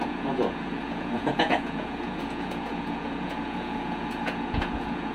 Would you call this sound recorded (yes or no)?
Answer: no